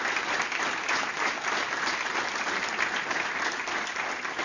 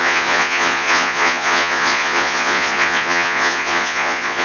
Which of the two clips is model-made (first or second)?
second